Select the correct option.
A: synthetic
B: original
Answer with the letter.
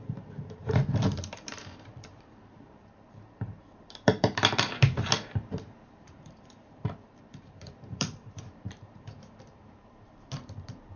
A